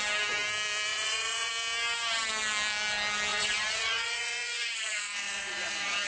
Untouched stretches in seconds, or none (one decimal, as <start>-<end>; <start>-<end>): 0.0-0.9; 1.5-3.3